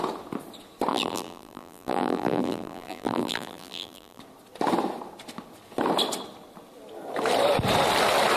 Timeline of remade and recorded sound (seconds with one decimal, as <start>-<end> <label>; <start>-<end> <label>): 0.0-0.9 recorded; 0.9-4.2 remade; 4.2-8.4 recorded